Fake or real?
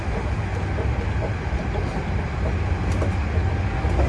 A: real